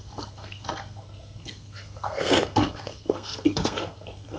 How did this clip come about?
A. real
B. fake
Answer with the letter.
B